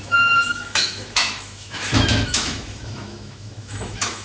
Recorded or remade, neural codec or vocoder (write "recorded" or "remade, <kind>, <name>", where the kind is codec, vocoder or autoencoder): remade, autoencoder, DAC-VAE